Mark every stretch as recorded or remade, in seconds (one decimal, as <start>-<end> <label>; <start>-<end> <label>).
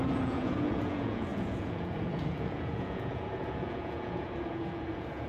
0.0-5.3 remade